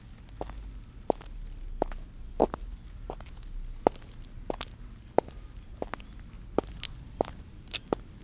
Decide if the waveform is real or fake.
real